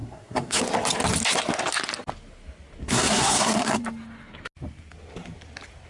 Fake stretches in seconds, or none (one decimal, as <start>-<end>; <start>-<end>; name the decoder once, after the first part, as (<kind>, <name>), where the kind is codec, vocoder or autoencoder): 0.0-0.6 (codec, SNAC); 2.8-3.8